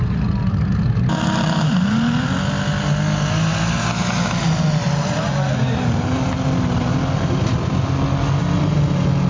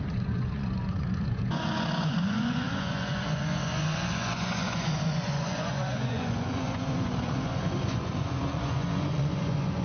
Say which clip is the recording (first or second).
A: first